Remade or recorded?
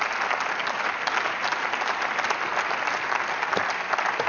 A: recorded